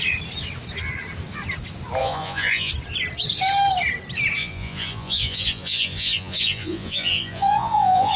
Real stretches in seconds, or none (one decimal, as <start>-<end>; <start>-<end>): 0.0-2.0; 2.7-4.4

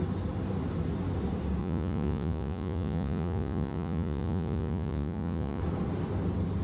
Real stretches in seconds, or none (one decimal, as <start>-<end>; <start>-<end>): 0.0-1.6; 5.6-6.6

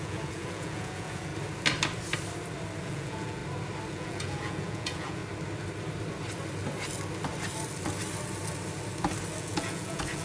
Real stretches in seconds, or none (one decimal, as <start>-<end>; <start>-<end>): 1.3-2.8; 3.4-3.9; 5.2-9.4

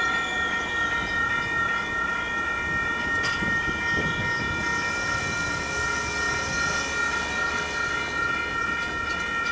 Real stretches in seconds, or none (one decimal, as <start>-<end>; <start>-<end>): 0.0-9.5

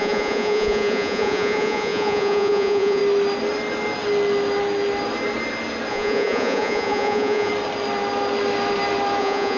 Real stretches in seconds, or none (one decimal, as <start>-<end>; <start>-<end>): 3.0-5.9; 7.5-9.2